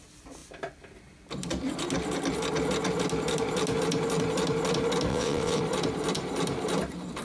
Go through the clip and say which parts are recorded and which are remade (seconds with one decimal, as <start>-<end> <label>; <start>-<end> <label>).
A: 0.0-5.1 recorded; 5.1-5.6 remade; 5.6-7.2 recorded